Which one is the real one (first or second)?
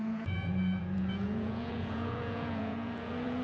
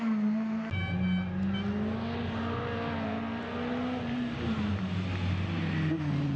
second